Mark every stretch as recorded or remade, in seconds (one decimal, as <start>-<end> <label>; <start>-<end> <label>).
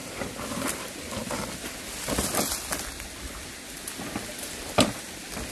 0.0-5.5 recorded